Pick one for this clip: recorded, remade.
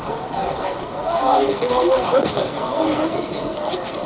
remade